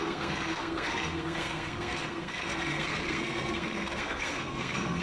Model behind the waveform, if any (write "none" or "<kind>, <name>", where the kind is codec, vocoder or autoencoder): codec, SNAC